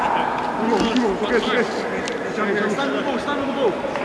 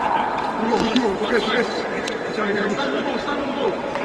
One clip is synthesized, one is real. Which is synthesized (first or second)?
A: second